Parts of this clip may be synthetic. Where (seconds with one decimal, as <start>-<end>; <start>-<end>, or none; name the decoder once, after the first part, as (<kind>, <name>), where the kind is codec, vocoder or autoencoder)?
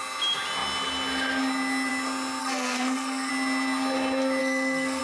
2.4-3.3 (codec, SNAC); 4.4-5.0